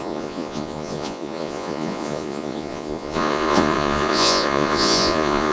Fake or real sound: fake